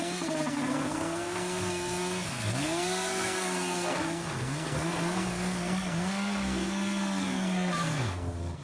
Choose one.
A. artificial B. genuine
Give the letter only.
A